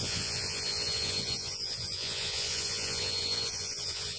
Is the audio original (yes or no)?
no